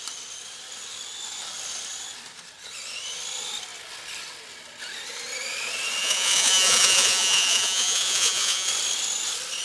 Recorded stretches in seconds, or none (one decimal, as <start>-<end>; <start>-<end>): 0.0-6.0; 8.7-9.6